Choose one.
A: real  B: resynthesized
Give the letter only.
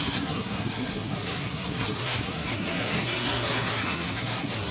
B